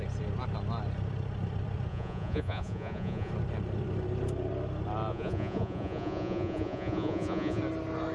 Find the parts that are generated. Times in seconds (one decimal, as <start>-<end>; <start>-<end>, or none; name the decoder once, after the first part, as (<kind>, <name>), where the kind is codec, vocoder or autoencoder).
1.9-3.3 (vocoder, Vocos); 5.1-7.6